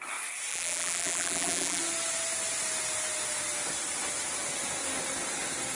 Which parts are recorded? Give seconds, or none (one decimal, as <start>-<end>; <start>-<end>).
0.0-0.5; 1.8-5.8